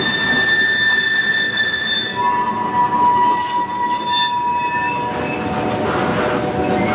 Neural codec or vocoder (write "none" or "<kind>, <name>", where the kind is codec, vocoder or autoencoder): none